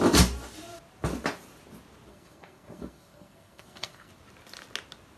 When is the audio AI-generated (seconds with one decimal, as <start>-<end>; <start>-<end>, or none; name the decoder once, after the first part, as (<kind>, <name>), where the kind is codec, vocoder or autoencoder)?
2.1-4.1 (codec, SNAC)